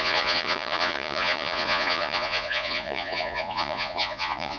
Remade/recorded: remade